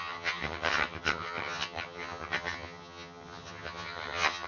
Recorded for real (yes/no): no